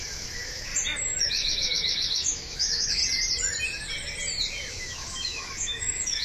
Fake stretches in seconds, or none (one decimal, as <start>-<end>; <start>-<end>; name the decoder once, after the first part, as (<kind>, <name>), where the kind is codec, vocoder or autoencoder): 0.0-0.7 (autoencoder, DAC-VAE); 1.2-3.0; 4.7-6.2